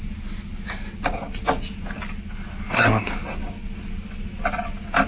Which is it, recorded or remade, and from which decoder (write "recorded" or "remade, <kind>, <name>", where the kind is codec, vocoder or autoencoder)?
recorded